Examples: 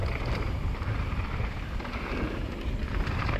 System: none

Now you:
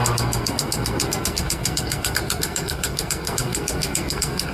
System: codec, SNAC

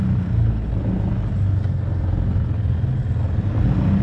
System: none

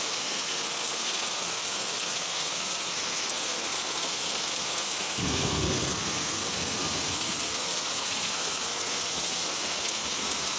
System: codec, SNAC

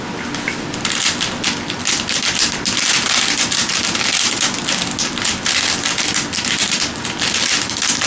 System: none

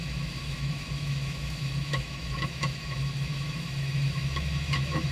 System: autoencoder, DAC-VAE